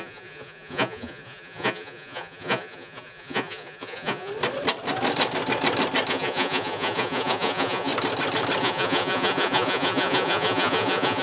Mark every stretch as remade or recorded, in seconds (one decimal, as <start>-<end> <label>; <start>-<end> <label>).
0.0-4.3 remade; 4.3-6.1 recorded; 6.1-7.9 remade; 7.9-8.6 recorded; 8.6-11.2 remade